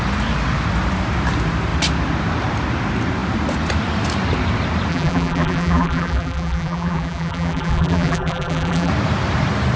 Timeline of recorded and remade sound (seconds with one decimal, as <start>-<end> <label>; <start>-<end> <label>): 0.0-4.9 recorded; 4.9-8.9 remade; 8.9-9.8 recorded